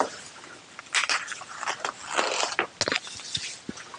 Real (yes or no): yes